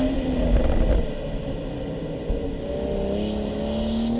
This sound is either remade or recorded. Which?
recorded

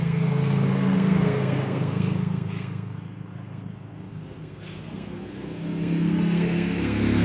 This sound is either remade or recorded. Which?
remade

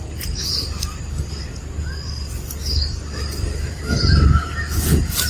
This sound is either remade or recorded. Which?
recorded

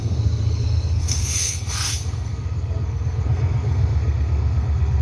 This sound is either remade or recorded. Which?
remade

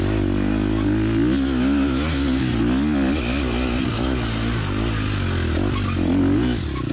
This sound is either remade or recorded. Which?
recorded